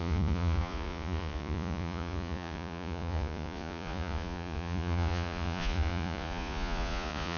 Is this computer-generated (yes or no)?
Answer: yes